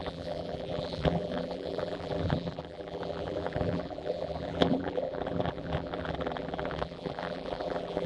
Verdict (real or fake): fake